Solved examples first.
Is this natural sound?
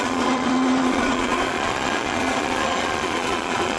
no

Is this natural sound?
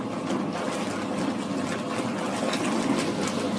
yes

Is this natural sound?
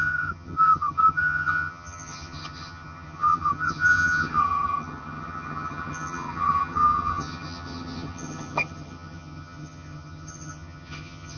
no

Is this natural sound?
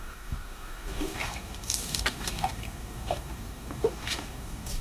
no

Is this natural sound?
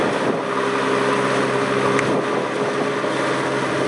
yes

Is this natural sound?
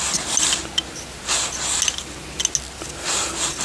yes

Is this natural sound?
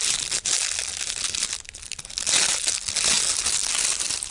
yes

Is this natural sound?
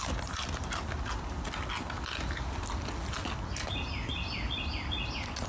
yes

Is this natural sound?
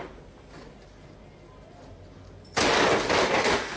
yes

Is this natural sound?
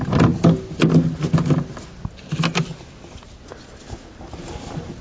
yes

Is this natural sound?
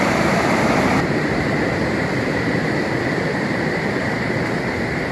no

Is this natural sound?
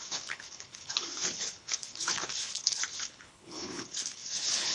no